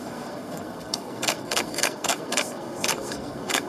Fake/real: fake